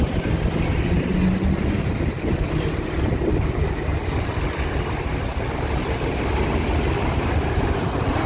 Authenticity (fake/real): real